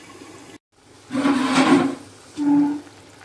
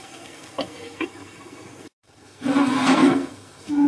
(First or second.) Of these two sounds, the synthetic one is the second